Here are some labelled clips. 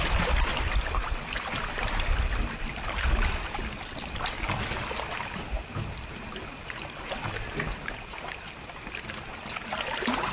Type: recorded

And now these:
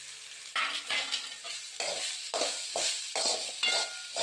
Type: recorded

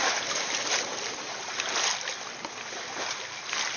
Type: recorded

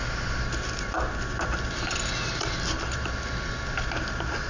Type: recorded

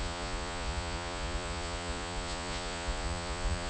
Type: remade